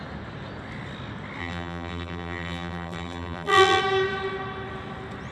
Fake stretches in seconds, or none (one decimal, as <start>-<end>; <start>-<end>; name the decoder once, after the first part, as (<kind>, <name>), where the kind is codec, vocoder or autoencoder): 1.4-3.8 (vocoder, BigVGAN v2)